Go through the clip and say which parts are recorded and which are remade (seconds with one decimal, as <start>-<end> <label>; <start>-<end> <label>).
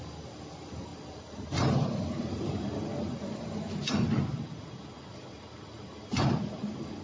0.0-7.0 recorded